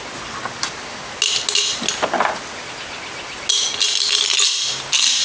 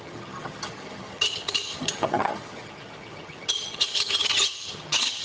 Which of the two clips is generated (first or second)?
second